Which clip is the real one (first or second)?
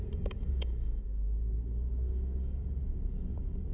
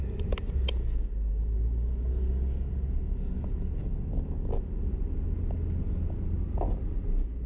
second